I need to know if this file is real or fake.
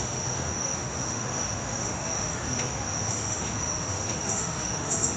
fake